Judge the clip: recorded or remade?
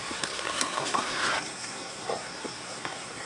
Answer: remade